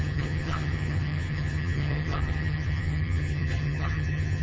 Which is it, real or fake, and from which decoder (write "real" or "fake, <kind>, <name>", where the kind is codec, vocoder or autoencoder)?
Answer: fake, vocoder, HiFi-GAN